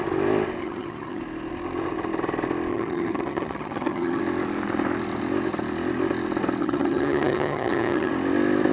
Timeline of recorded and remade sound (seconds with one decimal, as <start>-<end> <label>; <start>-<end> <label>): 0.0-0.6 recorded; 0.6-1.2 remade; 1.2-2.7 recorded; 2.7-4.2 remade; 4.2-6.6 recorded; 6.6-8.1 remade; 8.1-8.7 recorded